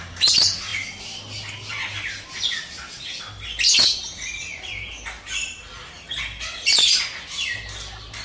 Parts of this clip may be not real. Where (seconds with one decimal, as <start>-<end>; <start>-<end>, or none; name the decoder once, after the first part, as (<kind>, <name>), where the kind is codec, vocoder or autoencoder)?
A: none